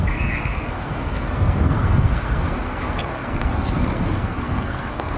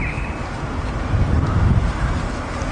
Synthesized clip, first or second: first